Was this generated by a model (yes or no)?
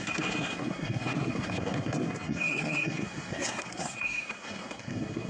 yes